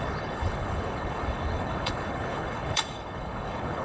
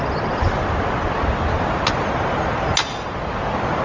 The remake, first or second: first